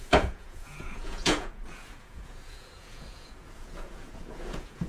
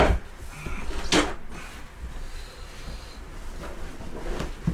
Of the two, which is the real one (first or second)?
second